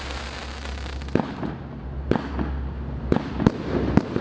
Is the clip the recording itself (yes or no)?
yes